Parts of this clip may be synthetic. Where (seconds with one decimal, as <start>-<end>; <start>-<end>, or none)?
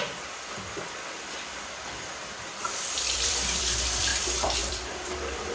0.0-5.5